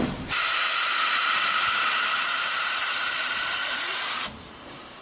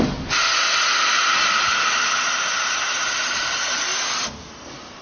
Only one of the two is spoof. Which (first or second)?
first